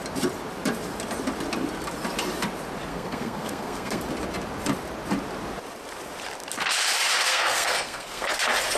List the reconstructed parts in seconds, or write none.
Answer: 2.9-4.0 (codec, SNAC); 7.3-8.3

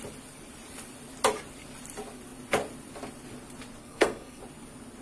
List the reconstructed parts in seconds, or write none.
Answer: 3.8-4.4 (codec, SNAC)

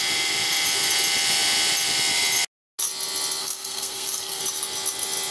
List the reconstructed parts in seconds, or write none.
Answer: 3.4-4.4 (codec, SNAC)

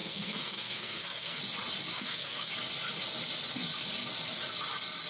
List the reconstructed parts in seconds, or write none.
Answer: 0.0-1.4 (codec, SNAC); 1.9-2.5

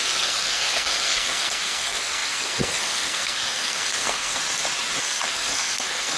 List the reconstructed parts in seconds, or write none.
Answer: 0.0-4.4 (codec, SNAC); 5.0-6.2

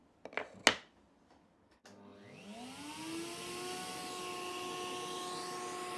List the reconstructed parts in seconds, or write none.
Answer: none